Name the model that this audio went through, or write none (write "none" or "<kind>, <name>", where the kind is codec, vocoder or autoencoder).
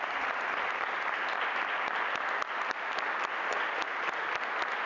none